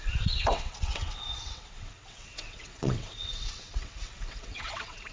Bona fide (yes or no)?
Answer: no